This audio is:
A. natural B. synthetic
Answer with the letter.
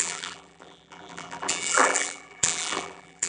B